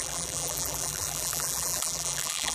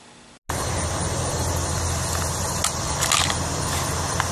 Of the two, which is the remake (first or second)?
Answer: first